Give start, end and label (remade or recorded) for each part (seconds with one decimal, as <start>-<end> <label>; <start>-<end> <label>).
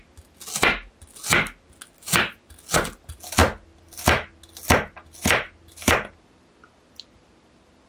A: 0.0-7.9 recorded